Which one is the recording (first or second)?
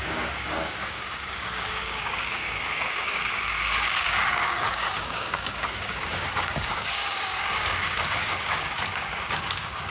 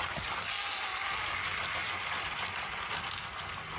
second